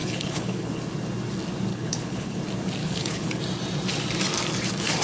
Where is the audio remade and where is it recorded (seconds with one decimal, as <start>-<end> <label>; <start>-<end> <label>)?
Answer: 0.0-0.8 remade; 0.8-1.7 recorded; 1.7-2.4 remade; 2.4-2.8 recorded; 2.8-3.4 remade; 3.4-5.0 recorded